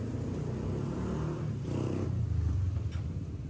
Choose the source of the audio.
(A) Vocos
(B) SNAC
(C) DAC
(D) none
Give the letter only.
D